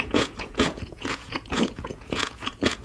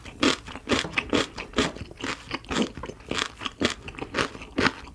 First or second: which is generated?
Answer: first